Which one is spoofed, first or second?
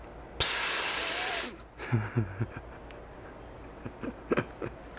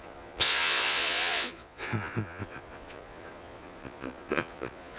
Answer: second